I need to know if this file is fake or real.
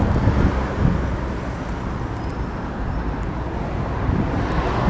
real